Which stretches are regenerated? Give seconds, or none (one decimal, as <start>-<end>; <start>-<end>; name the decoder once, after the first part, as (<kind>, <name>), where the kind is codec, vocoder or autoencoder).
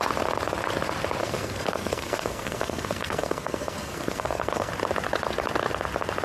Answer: 1.2-4.7 (codec, SNAC)